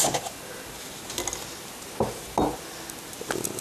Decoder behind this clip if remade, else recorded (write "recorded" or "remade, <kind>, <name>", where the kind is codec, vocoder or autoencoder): recorded